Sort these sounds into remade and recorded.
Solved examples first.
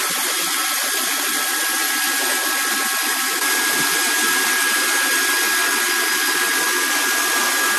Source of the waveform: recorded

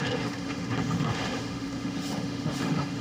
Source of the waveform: remade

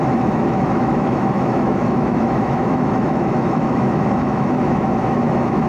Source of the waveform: remade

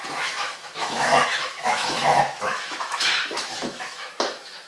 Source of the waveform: remade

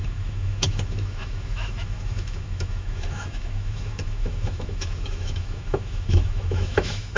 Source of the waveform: remade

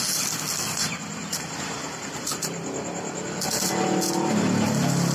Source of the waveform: recorded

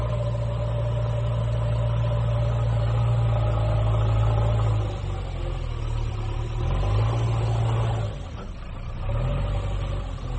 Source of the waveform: recorded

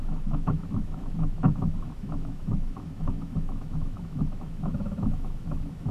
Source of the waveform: remade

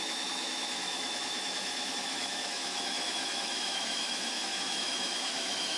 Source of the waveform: remade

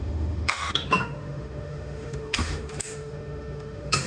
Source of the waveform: remade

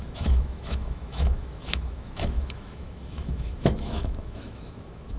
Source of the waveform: remade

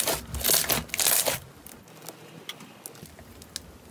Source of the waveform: recorded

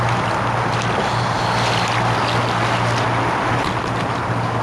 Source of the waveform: recorded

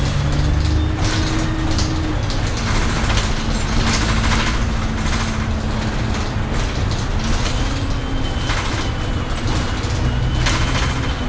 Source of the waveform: recorded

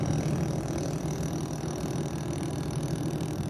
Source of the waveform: recorded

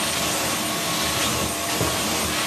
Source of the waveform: recorded